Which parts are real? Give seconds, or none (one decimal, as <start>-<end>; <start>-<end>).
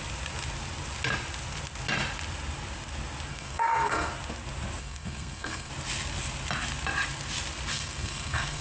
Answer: 0.0-3.3; 4.1-4.8; 5.7-7.7